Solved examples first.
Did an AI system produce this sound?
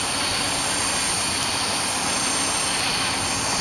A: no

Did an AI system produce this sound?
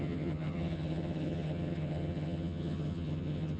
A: yes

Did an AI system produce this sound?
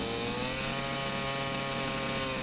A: no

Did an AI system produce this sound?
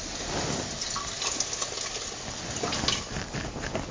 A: no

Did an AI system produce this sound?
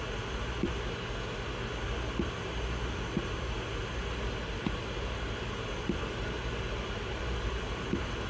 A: no